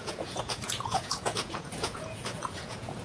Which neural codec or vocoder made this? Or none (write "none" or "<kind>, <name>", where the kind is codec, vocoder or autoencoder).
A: vocoder, Vocos